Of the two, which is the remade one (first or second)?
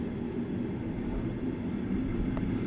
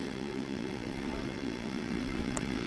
second